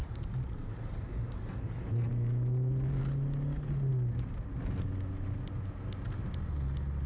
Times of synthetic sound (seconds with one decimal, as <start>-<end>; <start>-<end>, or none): 0.0-2.1